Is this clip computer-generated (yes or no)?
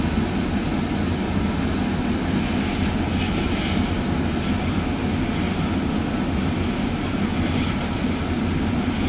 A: no